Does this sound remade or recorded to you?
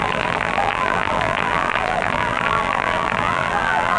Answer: remade